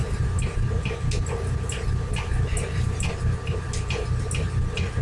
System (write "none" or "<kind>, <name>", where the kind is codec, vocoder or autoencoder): none